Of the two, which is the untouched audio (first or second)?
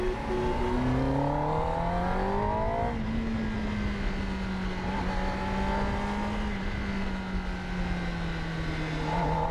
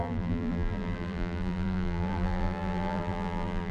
first